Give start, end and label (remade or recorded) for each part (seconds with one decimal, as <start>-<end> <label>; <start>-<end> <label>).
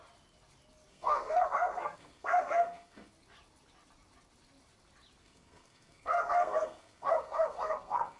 0.0-0.9 recorded; 0.9-3.1 remade; 3.1-5.2 recorded; 5.2-8.2 remade